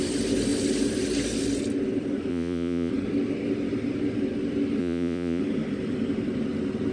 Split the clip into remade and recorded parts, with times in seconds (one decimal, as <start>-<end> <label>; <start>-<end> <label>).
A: 0.0-2.3 recorded; 2.3-2.9 remade; 2.9-4.8 recorded; 4.8-5.4 remade; 5.4-6.9 recorded